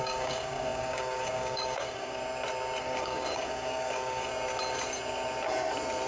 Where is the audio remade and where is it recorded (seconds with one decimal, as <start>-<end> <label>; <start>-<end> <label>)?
0.0-2.2 remade; 2.2-2.8 recorded; 2.8-4.3 remade; 4.3-6.1 recorded